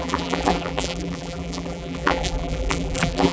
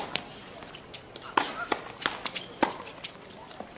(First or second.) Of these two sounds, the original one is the second